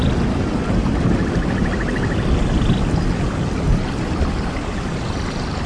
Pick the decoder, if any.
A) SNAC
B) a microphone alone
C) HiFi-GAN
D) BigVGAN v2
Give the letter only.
B